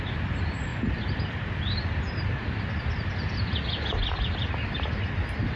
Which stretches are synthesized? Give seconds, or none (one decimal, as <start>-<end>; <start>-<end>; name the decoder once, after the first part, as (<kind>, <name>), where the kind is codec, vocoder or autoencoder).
none